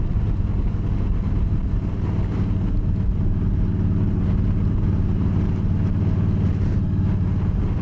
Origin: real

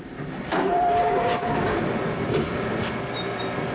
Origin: fake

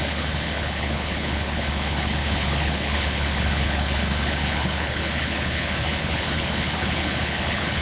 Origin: fake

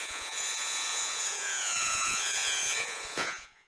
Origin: fake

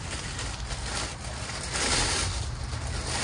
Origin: real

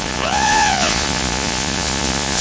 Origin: fake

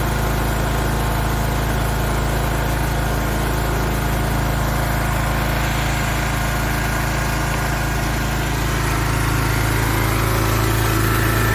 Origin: real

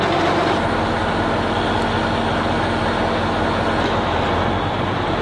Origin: real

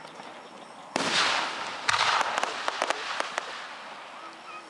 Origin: real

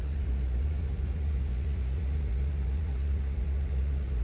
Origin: fake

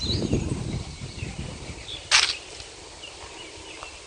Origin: real